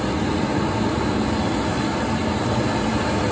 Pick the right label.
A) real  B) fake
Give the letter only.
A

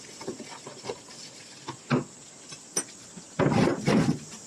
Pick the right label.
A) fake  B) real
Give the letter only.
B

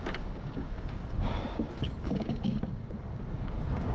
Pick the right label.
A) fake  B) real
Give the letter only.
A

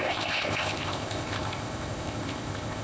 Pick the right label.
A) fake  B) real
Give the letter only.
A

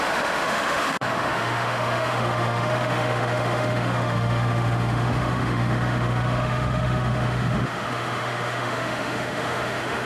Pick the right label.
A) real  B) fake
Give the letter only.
B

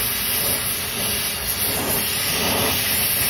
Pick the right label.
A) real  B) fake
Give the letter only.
A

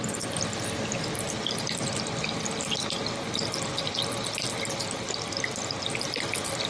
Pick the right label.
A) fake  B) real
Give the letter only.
B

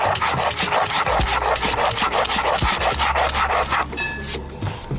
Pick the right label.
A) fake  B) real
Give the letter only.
B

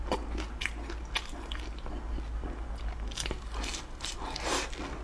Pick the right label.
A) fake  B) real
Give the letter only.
B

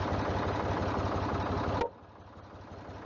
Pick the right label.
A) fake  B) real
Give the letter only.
B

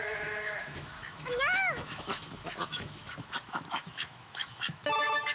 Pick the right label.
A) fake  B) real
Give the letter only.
A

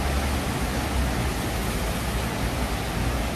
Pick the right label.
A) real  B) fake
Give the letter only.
A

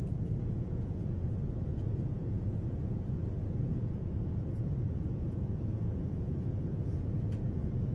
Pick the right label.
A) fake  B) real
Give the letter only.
A